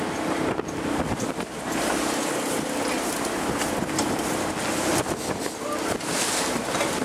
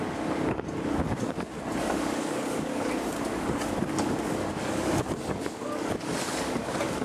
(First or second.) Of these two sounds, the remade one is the second